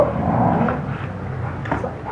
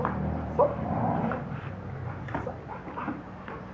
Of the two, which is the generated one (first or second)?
second